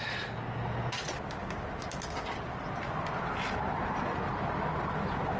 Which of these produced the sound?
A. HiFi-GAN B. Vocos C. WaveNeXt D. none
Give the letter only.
D